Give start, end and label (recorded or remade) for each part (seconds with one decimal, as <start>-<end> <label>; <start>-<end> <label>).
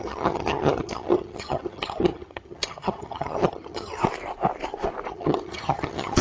0.0-4.0 remade; 4.0-5.1 recorded; 5.1-6.2 remade